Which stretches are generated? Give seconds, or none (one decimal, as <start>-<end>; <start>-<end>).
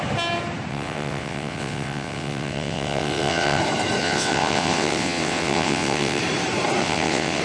0.7-3.6; 4.0-6.2; 6.8-7.4